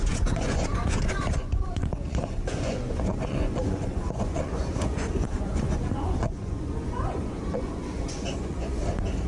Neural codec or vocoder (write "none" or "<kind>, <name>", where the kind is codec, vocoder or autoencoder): vocoder, Vocos